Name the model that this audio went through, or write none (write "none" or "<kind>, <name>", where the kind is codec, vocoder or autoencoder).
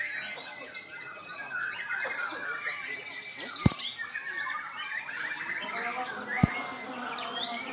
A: none